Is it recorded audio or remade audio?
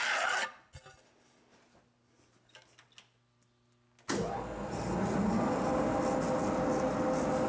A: recorded